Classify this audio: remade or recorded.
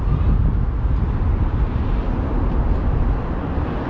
recorded